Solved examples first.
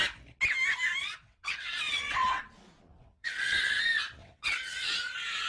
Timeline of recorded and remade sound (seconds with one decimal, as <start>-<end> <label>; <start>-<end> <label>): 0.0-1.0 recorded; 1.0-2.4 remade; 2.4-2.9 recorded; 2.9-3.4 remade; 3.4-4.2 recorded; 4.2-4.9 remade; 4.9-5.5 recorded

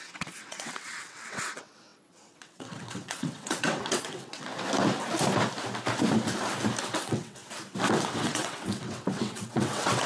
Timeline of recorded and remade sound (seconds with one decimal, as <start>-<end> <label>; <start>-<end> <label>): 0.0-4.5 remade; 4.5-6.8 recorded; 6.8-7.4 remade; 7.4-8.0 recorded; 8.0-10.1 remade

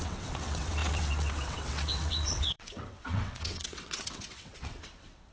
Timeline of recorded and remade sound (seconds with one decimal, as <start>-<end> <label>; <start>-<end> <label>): 0.0-5.3 remade